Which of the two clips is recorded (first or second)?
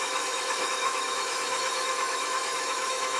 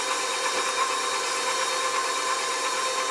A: second